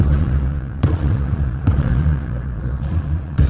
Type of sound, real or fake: fake